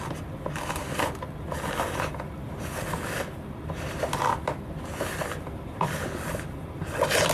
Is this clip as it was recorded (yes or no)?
yes